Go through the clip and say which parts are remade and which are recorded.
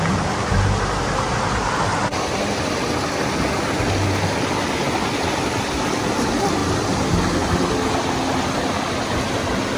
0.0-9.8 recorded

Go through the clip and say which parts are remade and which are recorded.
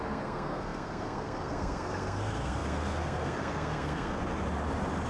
0.0-4.2 remade; 4.2-5.1 recorded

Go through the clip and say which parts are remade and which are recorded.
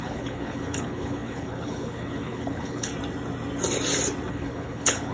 0.0-2.9 remade; 2.9-4.3 recorded; 4.3-5.1 remade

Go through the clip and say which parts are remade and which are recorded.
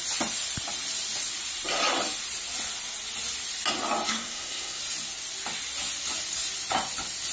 0.0-4.1 recorded; 4.1-4.8 remade; 4.8-7.3 recorded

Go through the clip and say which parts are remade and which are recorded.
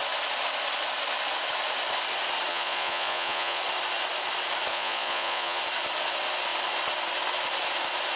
0.0-2.5 recorded; 2.5-3.6 remade; 3.6-4.7 recorded; 4.7-5.6 remade; 5.6-8.2 recorded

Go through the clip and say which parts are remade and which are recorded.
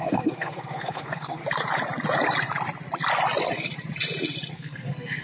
0.0-1.4 remade; 1.4-4.5 recorded; 4.5-5.2 remade